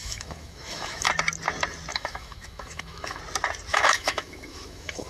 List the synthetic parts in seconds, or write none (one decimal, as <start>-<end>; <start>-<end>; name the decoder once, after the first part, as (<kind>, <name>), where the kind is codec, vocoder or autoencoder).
0.0-1.1 (autoencoder, DAC-VAE); 1.9-3.2; 3.7-5.1